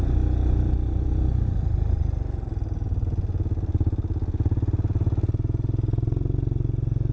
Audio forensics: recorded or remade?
recorded